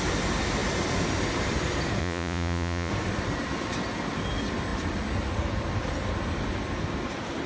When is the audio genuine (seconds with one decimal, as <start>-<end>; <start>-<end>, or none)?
0.0-2.0; 2.9-7.5